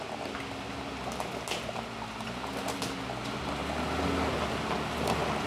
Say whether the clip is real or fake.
real